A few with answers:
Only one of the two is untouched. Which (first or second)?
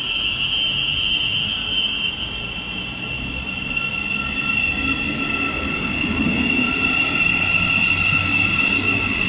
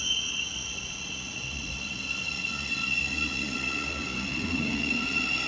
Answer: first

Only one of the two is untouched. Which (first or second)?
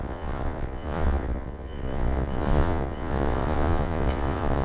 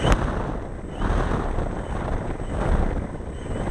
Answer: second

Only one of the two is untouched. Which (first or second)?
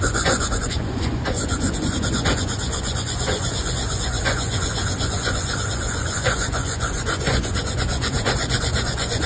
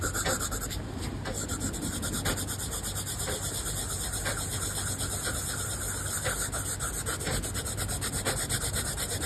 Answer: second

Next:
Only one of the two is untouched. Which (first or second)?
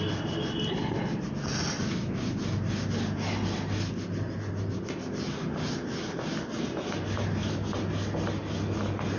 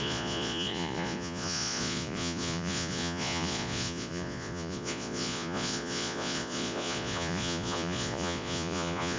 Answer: first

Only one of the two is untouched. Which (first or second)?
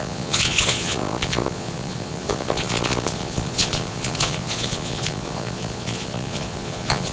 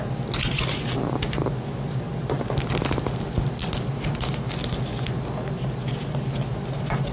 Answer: second